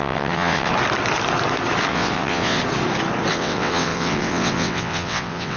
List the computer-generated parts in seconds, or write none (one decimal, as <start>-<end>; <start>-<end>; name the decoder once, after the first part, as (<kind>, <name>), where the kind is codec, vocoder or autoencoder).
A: 0.0-0.7 (vocoder, WaveNeXt); 1.9-2.6; 3.3-5.6